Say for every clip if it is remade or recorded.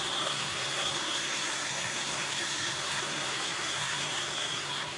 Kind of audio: remade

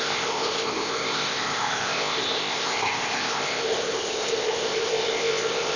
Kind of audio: remade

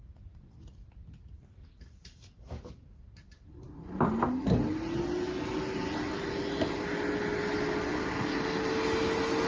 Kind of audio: recorded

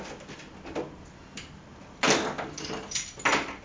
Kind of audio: recorded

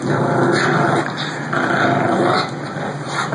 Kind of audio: recorded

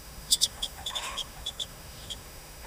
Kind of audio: remade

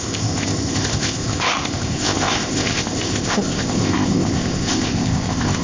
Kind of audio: remade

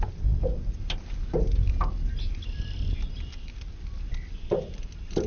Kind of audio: recorded